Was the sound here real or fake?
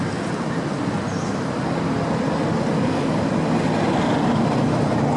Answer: real